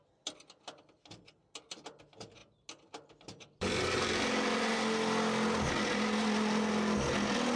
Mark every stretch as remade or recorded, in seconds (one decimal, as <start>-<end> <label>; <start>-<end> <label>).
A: 0.0-7.6 recorded